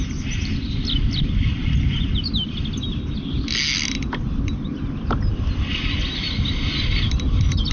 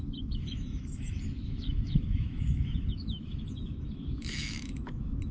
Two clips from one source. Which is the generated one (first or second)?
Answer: second